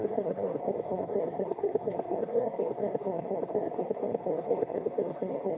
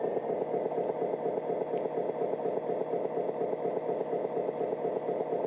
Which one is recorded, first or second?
second